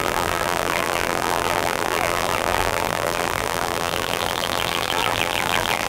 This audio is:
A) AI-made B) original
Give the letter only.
A